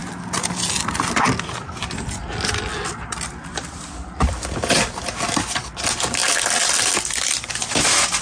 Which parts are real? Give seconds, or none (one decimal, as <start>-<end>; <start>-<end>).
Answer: 0.0-8.2

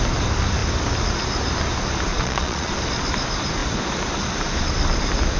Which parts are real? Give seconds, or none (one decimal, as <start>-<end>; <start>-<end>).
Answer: 0.0-2.1; 2.7-5.4

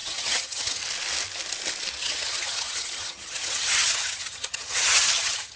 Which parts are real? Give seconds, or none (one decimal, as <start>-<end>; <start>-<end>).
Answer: 0.8-2.0

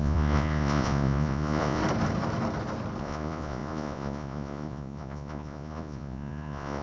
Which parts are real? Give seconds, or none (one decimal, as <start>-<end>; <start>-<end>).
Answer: 1.8-3.0

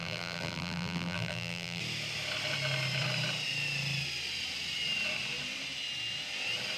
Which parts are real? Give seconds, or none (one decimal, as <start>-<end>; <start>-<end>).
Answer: 1.8-6.8

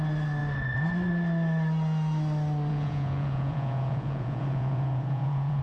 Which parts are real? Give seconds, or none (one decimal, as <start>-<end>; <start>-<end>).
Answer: 0.0-2.7

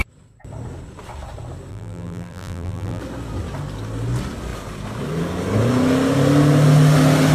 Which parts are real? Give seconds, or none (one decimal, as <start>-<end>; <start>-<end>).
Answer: 0.0-1.7; 3.0-7.3